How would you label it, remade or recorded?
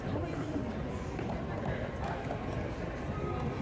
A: recorded